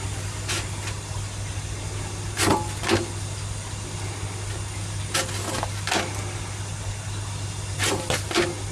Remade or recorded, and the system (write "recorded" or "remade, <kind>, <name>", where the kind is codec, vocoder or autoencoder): recorded